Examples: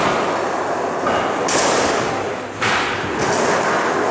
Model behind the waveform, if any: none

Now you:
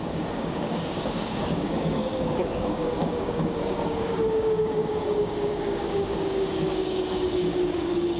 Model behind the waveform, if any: codec, DAC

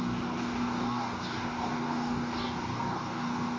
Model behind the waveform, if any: codec, DAC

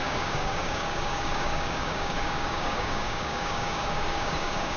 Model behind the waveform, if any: codec, DAC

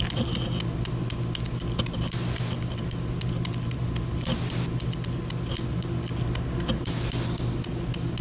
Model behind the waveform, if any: none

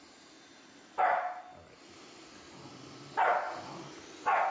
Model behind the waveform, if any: none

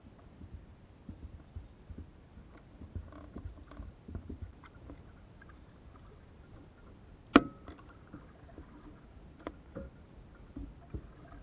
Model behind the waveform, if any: none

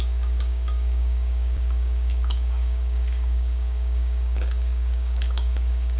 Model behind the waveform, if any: codec, DAC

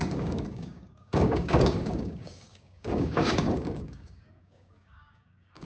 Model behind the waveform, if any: codec, DAC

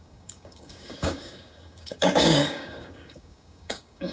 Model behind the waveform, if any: codec, DAC